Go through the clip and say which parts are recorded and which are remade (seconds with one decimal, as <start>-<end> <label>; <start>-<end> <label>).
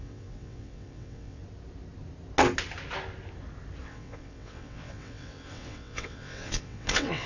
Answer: 0.0-1.4 remade; 1.4-3.8 recorded; 3.8-7.3 remade